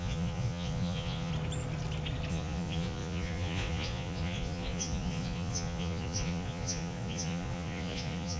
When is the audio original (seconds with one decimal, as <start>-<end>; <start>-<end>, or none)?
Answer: 1.3-2.3